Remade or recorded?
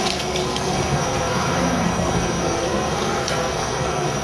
remade